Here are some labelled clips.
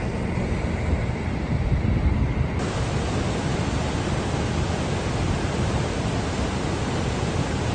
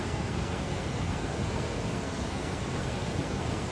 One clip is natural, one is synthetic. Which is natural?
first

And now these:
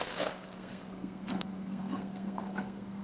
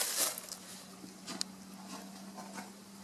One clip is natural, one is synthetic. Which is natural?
second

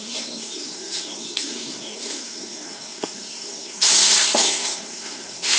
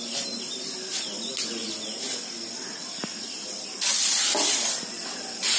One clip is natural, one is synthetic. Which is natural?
second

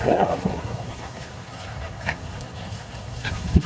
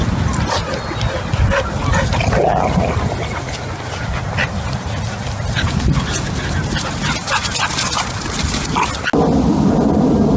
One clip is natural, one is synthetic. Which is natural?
second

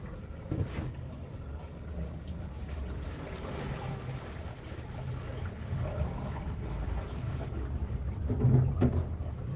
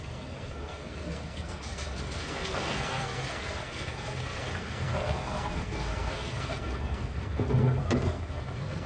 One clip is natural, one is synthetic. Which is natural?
first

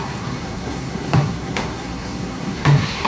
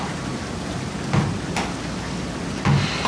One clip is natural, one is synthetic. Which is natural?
second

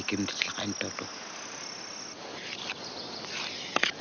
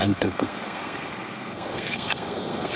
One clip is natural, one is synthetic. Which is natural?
first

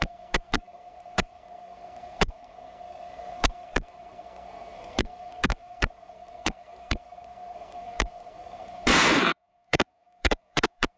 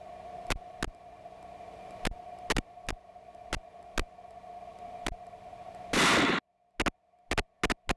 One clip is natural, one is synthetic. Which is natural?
second